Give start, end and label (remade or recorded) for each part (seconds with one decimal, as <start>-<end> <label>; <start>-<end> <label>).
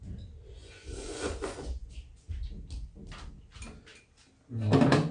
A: 0.0-0.6 recorded; 0.6-1.9 remade; 1.9-5.1 recorded